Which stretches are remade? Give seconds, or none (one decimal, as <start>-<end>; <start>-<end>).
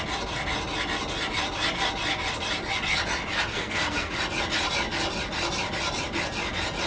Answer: 3.5-4.1